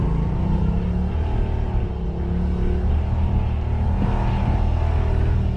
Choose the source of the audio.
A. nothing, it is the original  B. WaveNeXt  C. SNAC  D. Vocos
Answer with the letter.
A